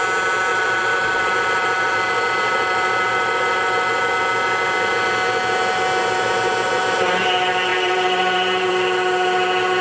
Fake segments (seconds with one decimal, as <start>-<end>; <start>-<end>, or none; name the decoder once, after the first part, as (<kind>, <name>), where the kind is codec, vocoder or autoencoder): 0.5-4.1 (vocoder, BigVGAN v2); 7.7-8.7